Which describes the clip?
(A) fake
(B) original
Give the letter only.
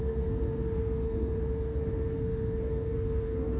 A